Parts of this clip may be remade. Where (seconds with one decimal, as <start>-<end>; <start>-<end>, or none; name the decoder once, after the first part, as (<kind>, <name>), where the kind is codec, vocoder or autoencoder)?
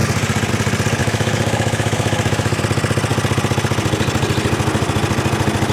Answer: 1.0-2.6 (autoencoder, DAC-VAE)